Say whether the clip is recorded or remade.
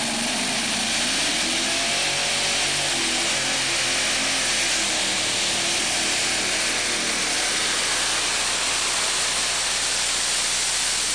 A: recorded